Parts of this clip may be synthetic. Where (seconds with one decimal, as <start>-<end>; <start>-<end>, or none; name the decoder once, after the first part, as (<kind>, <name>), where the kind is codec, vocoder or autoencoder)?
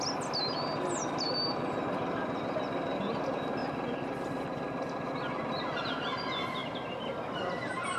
6.6-7.1 (vocoder, BigVGAN v2)